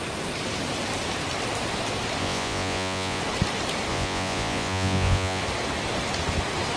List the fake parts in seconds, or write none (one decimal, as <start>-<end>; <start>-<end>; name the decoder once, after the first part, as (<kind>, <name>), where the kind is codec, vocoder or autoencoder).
2.2-3.2 (vocoder, Vocos); 3.9-5.4